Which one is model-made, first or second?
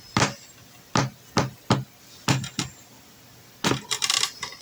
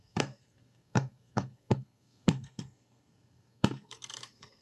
second